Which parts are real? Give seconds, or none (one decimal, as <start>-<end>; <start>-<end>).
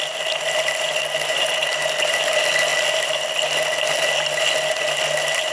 0.0-5.5